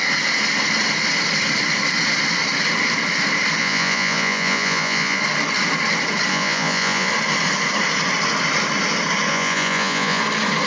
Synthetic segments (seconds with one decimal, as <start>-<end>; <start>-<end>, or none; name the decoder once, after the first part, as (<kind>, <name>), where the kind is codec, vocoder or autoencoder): 3.6-5.2 (vocoder, Vocos); 6.3-7.1; 9.3-10.2